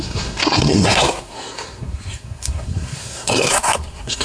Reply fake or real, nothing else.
fake